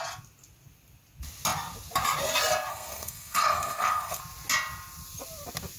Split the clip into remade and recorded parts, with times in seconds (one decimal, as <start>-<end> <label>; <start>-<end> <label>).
0.0-2.7 recorded; 2.7-4.2 remade; 4.2-5.8 recorded